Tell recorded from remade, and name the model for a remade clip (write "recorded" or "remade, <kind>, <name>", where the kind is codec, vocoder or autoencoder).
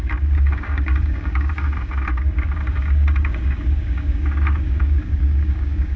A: remade, codec, DAC